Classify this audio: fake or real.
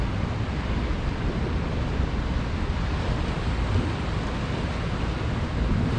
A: real